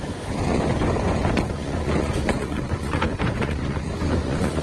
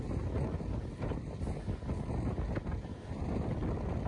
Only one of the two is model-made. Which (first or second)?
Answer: first